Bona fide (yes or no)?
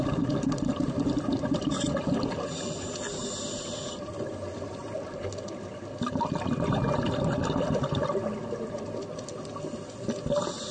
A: yes